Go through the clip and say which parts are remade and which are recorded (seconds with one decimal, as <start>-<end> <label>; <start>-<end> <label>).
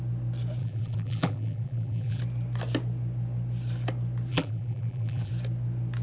0.0-0.6 recorded; 0.6-2.2 remade; 2.2-4.3 recorded; 4.3-5.3 remade; 5.3-6.0 recorded